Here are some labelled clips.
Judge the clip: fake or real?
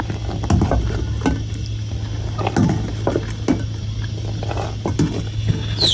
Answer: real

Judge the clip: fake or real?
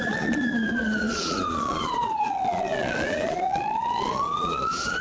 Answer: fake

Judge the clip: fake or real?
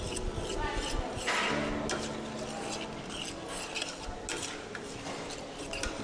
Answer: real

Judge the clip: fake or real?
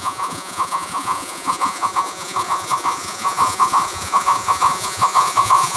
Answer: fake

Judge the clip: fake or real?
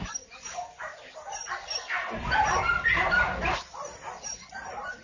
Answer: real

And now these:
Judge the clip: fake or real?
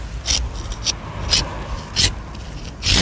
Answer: real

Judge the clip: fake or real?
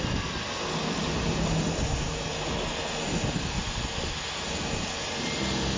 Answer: real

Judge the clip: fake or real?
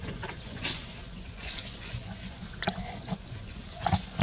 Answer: fake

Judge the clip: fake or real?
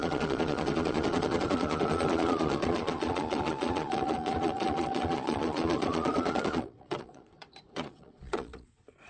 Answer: fake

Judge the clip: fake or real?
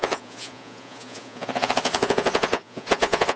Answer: fake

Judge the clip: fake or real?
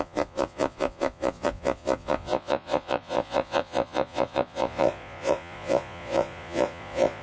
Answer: fake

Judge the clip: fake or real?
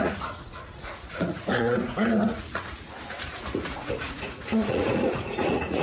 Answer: fake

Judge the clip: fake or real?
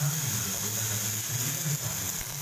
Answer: real